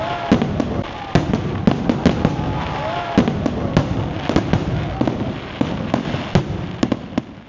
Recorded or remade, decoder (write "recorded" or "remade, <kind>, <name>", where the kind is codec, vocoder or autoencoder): recorded